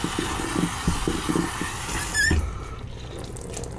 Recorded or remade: recorded